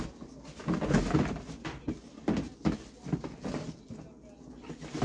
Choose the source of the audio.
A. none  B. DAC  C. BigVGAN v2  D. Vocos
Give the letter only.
A